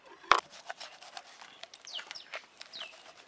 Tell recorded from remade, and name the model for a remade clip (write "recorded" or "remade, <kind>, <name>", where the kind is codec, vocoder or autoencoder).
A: remade, vocoder, BigVGAN v2